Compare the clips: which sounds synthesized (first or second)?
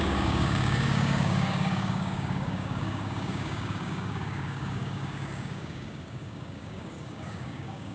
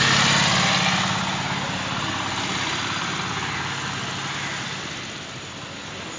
first